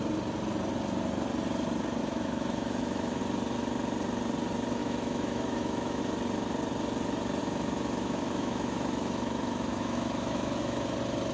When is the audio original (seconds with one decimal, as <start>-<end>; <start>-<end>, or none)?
0.0-2.0; 3.2-4.8; 6.0-7.4; 10.9-11.3